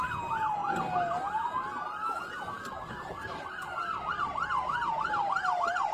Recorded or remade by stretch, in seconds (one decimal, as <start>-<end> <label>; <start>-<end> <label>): 0.0-5.9 recorded